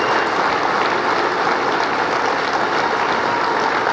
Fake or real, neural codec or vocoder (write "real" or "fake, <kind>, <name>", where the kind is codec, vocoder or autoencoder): real